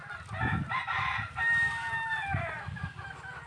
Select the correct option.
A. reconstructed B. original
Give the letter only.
B